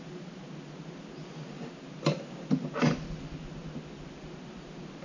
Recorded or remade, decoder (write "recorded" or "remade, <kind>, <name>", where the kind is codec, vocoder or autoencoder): recorded